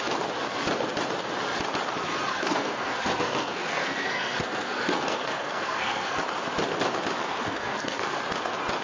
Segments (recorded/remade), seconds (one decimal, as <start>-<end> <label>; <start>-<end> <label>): 0.0-2.3 recorded; 2.3-6.2 remade; 6.2-7.2 recorded; 7.2-8.2 remade; 8.2-8.8 recorded

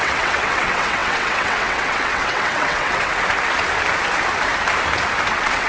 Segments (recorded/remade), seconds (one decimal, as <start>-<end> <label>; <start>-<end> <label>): 0.0-3.1 remade; 3.1-5.3 recorded; 5.3-5.7 remade

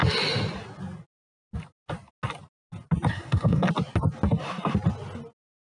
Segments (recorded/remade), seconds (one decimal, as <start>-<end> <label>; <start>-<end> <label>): 0.0-3.1 recorded; 3.1-3.7 remade; 3.7-5.7 recorded

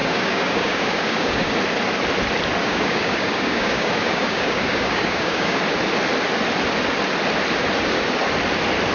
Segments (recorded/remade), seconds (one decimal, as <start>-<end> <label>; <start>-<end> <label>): 0.0-1.5 remade; 1.5-2.6 recorded; 2.6-5.6 remade; 5.6-8.9 recorded

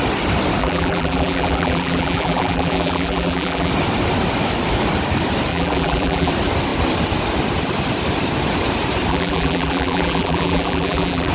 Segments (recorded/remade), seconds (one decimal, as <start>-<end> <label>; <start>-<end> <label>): 0.0-0.6 recorded; 0.6-3.7 remade; 3.7-5.5 recorded; 5.5-6.3 remade; 6.3-9.1 recorded; 9.1-11.3 remade

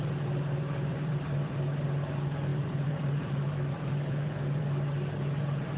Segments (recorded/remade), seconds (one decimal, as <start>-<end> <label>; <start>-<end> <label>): 0.0-0.9 recorded; 0.9-1.5 remade; 1.5-2.5 recorded; 2.5-4.7 remade; 4.7-5.8 recorded

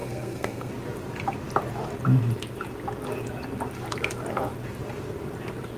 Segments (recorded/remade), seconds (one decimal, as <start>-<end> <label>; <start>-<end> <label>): 0.0-0.7 remade; 0.7-5.8 recorded

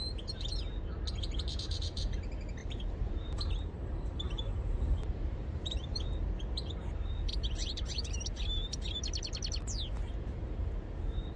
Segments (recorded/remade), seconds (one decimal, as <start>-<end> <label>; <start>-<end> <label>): 0.0-2.6 recorded; 2.6-6.0 remade; 6.0-7.6 recorded; 7.6-8.2 remade; 8.2-11.4 recorded